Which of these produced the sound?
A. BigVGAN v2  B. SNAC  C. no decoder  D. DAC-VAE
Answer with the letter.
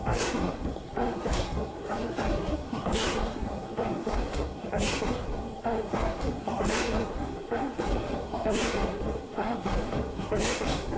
B